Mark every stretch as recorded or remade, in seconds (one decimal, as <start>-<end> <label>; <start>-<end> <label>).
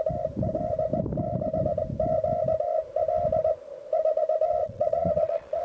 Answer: 0.0-4.6 recorded; 4.6-5.6 remade